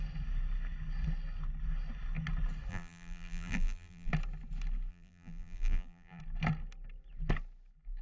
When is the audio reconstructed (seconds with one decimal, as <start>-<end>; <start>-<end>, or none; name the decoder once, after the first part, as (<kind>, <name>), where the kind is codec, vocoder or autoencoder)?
2.7-4.1 (vocoder, BigVGAN v2); 4.9-6.2